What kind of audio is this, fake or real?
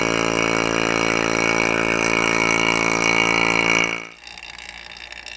real